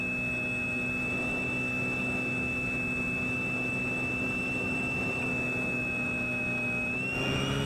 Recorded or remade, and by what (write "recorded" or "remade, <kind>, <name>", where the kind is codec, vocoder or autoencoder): remade, autoencoder, DAC-VAE